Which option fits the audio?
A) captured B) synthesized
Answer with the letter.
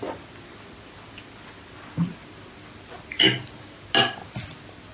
A